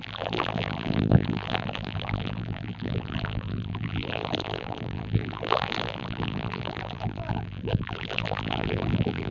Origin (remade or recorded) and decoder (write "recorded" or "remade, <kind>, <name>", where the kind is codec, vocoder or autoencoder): remade, vocoder, BigVGAN v2